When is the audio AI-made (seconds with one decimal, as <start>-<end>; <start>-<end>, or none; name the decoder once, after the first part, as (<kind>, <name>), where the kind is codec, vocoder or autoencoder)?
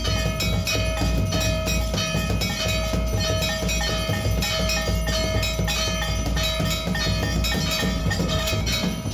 8.0-8.5 (codec, SNAC)